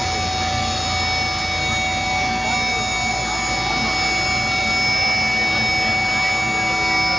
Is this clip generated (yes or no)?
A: no